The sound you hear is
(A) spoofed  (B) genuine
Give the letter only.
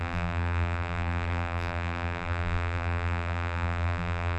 A